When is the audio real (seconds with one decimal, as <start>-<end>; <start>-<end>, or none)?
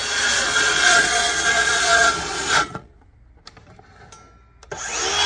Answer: 3.2-5.3